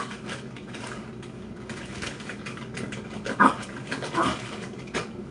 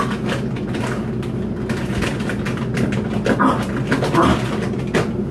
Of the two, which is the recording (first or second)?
second